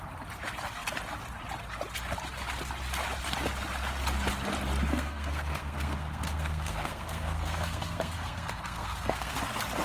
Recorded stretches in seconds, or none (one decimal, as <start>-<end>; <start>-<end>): 0.0-4.9; 9.4-9.8